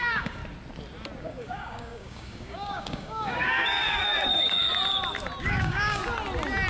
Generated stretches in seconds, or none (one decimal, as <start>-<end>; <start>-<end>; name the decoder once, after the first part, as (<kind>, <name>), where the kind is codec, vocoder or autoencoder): 0.0-0.4 (codec, DAC); 1.2-4.6; 5.4-6.0